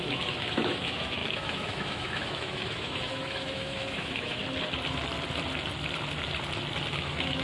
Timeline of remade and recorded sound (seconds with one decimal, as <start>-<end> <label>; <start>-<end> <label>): 0.0-4.4 remade; 4.4-6.9 recorded; 6.9-7.4 remade